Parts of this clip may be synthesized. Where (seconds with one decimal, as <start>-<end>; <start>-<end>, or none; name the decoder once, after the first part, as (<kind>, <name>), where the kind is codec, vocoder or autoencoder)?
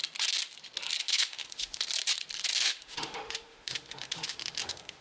1.0-1.8 (autoencoder, DAC-VAE); 2.5-5.0